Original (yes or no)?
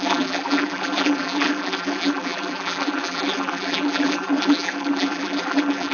no